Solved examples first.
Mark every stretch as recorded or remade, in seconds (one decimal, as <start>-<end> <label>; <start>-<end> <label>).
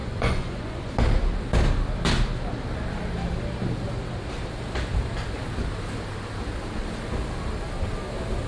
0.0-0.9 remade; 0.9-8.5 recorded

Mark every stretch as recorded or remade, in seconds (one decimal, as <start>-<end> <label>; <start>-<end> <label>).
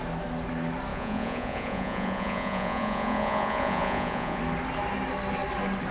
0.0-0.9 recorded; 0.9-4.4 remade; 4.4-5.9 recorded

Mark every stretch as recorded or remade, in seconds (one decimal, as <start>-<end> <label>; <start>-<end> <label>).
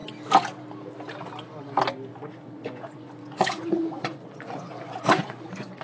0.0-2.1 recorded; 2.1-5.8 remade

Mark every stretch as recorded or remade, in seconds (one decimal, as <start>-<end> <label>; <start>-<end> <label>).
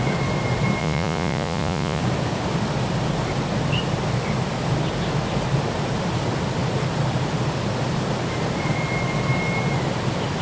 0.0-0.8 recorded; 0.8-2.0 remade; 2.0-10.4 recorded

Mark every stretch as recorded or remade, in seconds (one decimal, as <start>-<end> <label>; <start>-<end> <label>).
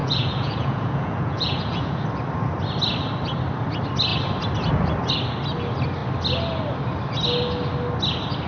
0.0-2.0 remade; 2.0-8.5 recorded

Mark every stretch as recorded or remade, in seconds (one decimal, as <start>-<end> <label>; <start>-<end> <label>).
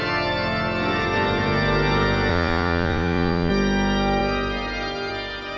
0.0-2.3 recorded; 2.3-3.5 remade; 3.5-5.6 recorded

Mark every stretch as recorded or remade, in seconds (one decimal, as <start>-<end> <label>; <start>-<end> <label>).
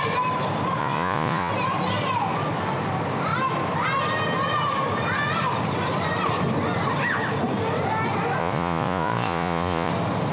0.0-0.8 recorded; 0.8-1.5 remade; 1.5-8.4 recorded; 8.4-9.9 remade; 9.9-10.3 recorded